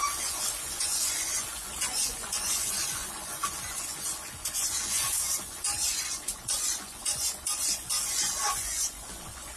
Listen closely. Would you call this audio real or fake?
fake